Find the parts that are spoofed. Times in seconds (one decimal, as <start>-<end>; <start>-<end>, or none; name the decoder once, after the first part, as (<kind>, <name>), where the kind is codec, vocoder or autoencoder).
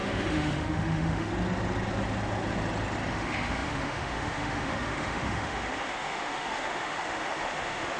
0.0-1.3 (autoencoder, DAC-VAE); 3.1-8.0